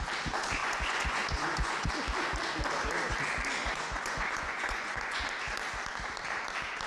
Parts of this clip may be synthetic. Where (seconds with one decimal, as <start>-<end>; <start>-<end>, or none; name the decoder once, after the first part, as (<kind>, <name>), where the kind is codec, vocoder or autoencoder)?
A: 0.6-1.9 (vocoder, Vocos); 3.6-5.2